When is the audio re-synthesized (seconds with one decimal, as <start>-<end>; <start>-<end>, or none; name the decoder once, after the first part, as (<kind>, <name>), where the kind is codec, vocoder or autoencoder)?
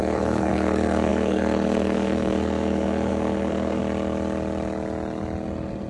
0.0-3.8 (codec, SNAC)